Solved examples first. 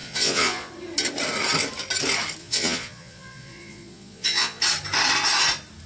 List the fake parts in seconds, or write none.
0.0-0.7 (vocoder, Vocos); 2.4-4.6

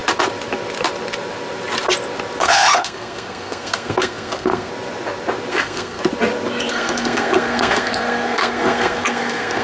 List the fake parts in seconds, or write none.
2.4-4.7 (codec, SNAC); 5.5-6.0; 6.7-9.6

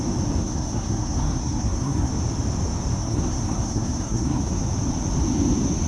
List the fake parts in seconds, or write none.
0.4-2.1 (codec, SNAC); 3.0-4.6

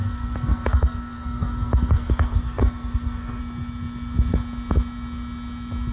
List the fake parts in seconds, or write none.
0.0-3.4 (codec, SNAC)

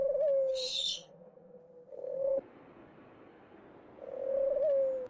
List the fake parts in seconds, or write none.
0.5-3.6 (codec, SNAC)